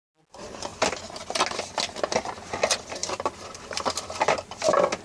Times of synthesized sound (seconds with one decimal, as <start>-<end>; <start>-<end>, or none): none